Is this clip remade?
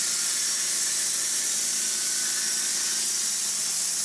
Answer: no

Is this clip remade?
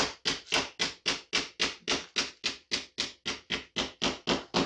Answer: no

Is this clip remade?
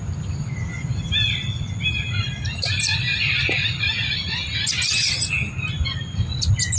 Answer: no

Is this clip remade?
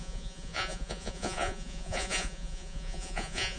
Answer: yes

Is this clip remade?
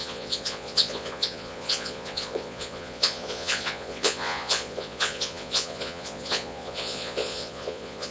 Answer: yes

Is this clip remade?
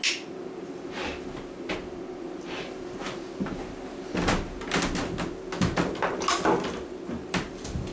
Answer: no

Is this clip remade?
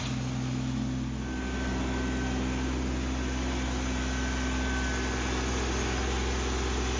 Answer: no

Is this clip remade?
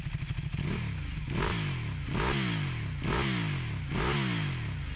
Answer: no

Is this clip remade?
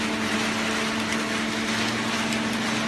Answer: no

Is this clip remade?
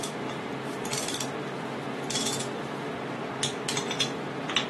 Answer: no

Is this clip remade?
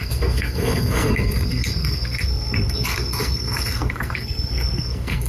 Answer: yes